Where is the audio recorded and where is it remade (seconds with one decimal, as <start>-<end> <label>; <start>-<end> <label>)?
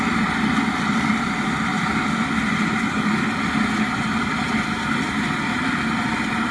0.0-1.7 recorded; 1.7-5.6 remade; 5.6-6.5 recorded